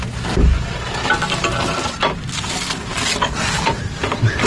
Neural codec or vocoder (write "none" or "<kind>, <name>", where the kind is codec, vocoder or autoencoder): none